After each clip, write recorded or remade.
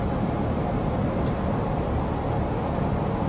recorded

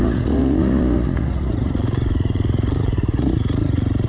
remade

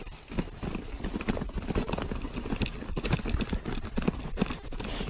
recorded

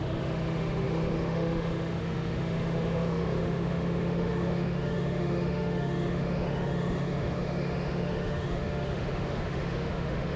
remade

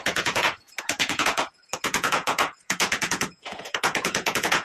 remade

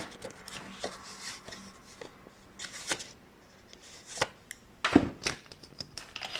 recorded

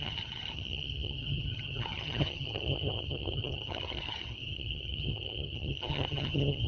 remade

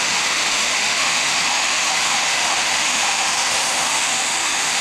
remade